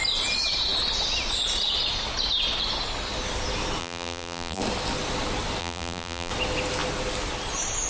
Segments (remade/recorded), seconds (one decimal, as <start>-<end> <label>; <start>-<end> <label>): 0.0-3.8 recorded; 3.8-4.6 remade; 4.6-5.6 recorded; 5.6-6.3 remade; 6.3-7.9 recorded